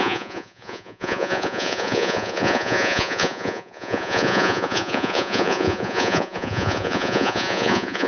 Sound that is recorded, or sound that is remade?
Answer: remade